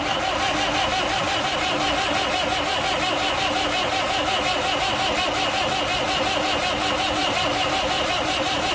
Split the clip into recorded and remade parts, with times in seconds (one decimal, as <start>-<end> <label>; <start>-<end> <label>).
0.0-7.2 recorded; 7.2-8.7 remade